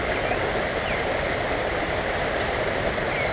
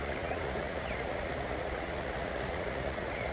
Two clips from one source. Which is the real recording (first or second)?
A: first